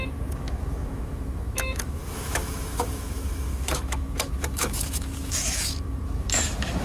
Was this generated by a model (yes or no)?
yes